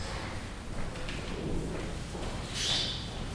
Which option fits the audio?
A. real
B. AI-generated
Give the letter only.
A